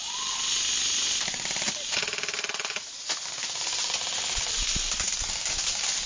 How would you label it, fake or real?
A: real